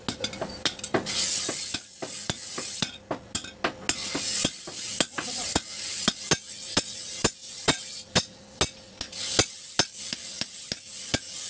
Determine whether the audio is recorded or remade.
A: recorded